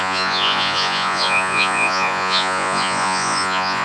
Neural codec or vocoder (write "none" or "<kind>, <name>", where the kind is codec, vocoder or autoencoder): vocoder, Vocos